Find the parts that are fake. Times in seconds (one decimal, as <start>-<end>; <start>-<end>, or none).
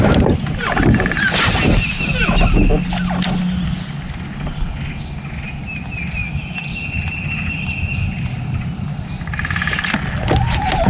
none